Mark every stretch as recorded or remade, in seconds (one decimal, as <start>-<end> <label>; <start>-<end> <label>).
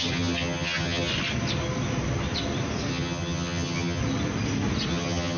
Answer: 0.0-1.1 remade; 1.1-2.9 recorded; 2.9-4.0 remade; 4.0-4.9 recorded; 4.9-5.4 remade